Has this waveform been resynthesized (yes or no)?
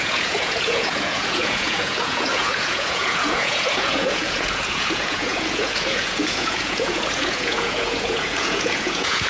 yes